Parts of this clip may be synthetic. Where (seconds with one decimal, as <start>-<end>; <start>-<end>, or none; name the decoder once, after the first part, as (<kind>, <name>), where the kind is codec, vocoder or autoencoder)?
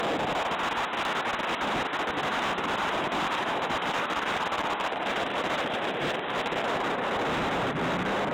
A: 2.3-7.1 (vocoder, BigVGAN v2)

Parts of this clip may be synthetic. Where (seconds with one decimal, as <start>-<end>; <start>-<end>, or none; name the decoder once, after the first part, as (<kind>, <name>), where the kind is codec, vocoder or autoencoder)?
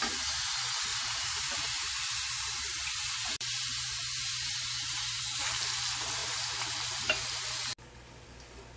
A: 0.9-5.2 (vocoder, BigVGAN v2); 6.2-7.2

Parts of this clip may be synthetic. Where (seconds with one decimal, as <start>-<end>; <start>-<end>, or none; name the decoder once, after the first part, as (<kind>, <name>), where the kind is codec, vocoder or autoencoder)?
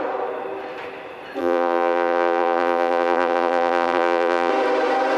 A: 1.4-4.5 (vocoder, BigVGAN v2)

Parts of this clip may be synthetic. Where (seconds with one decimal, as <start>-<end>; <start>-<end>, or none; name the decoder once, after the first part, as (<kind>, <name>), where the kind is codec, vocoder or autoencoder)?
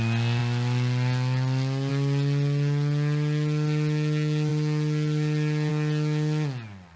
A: none